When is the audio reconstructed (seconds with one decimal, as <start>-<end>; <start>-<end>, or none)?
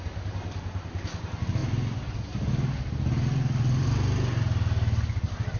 none